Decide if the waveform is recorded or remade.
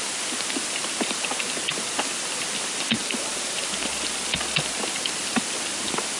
recorded